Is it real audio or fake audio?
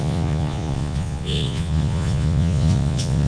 fake